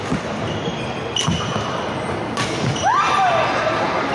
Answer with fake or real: real